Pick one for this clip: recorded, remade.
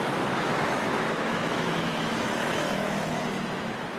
remade